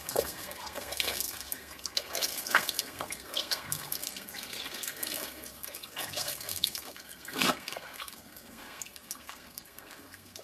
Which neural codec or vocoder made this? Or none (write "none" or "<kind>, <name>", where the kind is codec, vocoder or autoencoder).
codec, SNAC